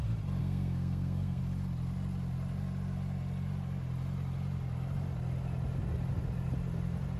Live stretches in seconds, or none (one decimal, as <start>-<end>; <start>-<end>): 0.0-0.4; 1.4-7.2